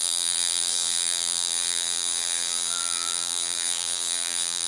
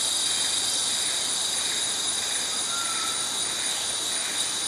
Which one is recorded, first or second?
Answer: second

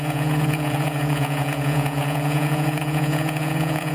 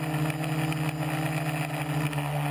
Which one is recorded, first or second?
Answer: second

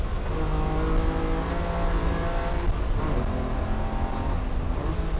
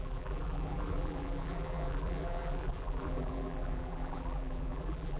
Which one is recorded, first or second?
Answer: first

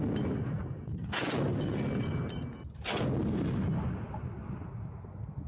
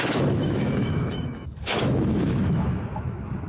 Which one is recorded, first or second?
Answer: first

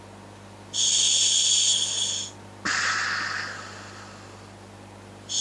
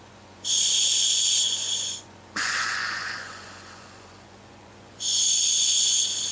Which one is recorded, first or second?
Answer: first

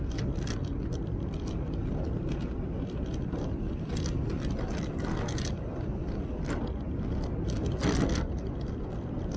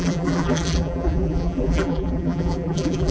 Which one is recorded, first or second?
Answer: first